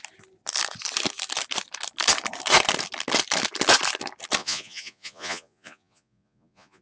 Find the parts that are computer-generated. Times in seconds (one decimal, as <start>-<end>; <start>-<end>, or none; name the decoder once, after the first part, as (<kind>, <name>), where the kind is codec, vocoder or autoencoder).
4.4-6.8 (vocoder, Vocos)